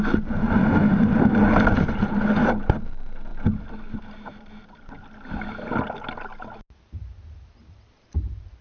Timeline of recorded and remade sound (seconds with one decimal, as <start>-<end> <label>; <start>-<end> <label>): 0.0-8.6 recorded